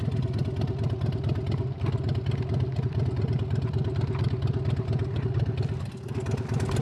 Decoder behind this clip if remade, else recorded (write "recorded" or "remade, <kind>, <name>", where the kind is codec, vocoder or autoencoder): recorded